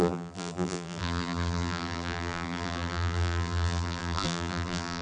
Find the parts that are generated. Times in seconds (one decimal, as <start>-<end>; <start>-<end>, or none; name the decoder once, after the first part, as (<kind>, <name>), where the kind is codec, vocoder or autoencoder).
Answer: 0.0-5.0 (vocoder, BigVGAN v2)